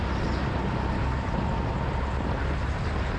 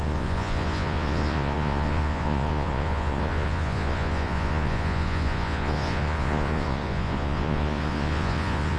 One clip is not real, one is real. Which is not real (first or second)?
second